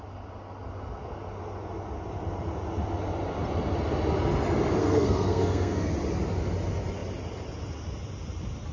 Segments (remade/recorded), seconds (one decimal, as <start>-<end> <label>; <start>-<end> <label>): 0.0-4.8 recorded; 4.8-5.9 remade; 5.9-8.7 recorded